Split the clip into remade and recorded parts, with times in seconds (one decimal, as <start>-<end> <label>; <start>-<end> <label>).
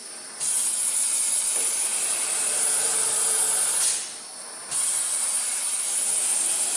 0.0-6.8 recorded